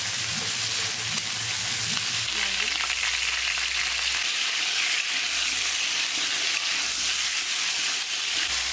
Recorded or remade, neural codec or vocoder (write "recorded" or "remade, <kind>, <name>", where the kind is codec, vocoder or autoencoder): recorded